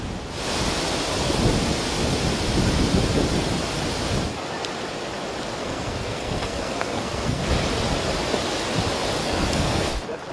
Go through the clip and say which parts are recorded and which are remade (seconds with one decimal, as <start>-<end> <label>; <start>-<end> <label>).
0.0-5.6 recorded; 5.6-7.4 remade; 7.4-9.2 recorded; 9.2-9.9 remade; 9.9-10.3 recorded